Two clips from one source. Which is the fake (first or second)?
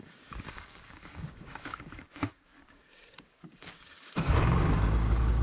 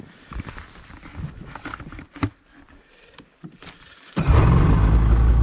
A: first